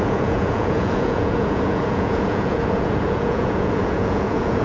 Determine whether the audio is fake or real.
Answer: fake